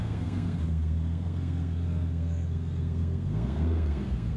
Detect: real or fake fake